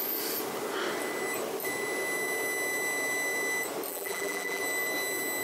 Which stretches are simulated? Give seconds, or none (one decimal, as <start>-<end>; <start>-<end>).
3.9-4.6